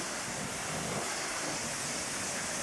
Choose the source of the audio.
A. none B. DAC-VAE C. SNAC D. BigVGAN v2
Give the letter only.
A